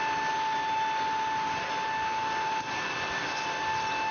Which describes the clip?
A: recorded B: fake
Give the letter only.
A